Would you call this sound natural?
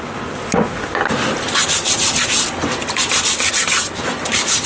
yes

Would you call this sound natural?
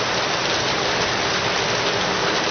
yes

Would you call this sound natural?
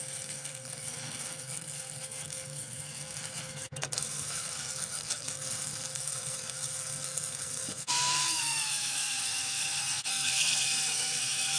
no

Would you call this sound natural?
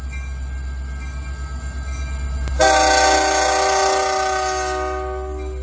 yes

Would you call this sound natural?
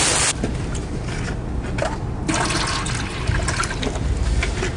yes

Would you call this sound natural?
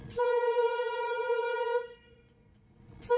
no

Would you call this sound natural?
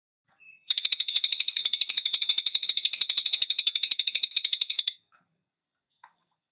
no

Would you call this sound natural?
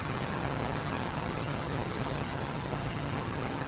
no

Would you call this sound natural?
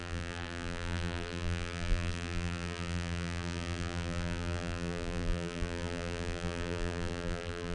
no